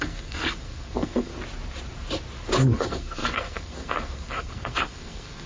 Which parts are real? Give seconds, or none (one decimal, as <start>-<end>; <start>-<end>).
1.3-2.8